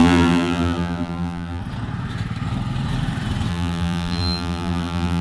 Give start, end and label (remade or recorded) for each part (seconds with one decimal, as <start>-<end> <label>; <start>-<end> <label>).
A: 0.0-1.6 remade; 1.6-3.5 recorded; 3.5-5.2 remade